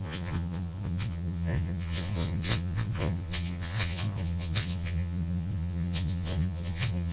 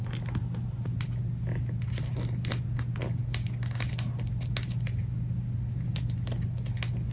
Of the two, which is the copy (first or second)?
first